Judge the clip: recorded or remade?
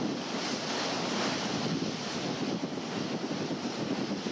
recorded